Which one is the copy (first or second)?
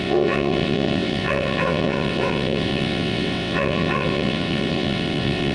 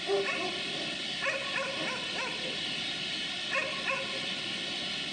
first